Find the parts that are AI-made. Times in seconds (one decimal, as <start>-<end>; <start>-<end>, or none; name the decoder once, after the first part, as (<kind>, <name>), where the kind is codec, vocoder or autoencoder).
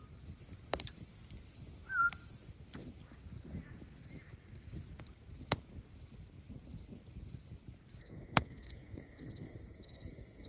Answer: 8.0-10.5 (codec, SNAC)